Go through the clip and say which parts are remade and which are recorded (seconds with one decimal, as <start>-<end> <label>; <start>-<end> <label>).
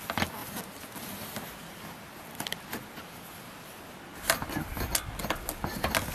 0.0-6.1 recorded